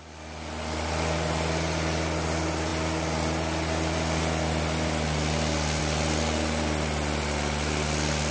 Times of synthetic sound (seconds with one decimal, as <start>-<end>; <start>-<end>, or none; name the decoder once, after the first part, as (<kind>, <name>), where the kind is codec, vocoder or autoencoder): none